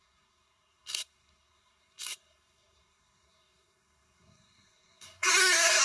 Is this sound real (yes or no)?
no